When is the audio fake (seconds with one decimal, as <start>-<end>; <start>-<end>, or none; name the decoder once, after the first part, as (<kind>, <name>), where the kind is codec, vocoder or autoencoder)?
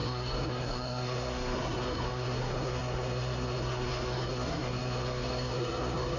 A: 0.0-6.2 (codec, SNAC)